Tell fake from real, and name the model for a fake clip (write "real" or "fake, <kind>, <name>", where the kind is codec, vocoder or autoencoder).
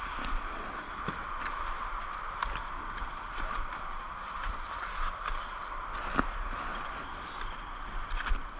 real